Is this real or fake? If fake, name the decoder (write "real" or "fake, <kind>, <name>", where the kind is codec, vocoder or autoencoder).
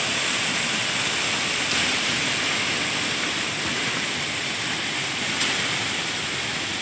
real